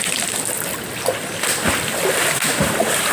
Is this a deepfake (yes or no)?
no